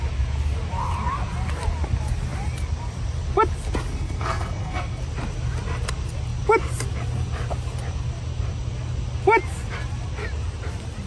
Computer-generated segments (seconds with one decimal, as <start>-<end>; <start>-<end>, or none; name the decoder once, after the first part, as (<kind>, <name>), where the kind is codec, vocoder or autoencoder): 3.9-5.0 (codec, SNAC)